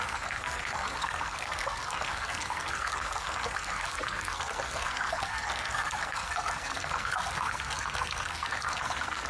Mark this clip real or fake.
fake